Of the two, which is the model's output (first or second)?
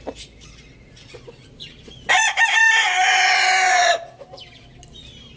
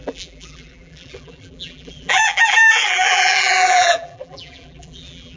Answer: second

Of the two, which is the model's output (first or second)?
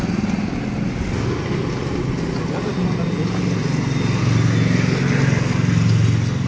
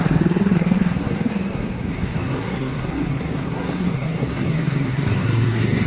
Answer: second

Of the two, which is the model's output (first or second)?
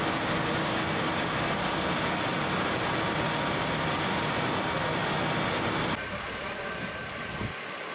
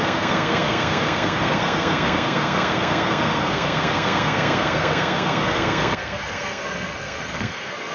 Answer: second